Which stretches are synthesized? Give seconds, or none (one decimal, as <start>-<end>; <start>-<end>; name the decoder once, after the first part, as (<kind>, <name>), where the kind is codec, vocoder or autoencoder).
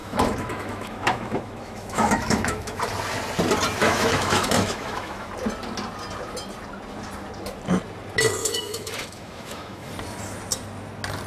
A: 0.0-2.8 (autoencoder, DAC-VAE); 3.8-5.3; 8.4-9.9